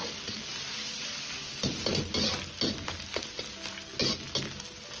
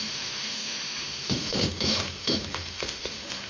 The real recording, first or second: first